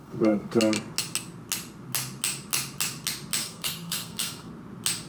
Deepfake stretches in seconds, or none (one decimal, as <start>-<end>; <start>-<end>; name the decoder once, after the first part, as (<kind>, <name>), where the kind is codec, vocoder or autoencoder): 0.0-0.6 (codec, SNAC); 3.4-4.5